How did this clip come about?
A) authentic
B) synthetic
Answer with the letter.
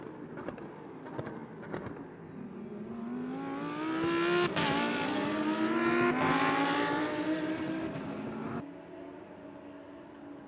A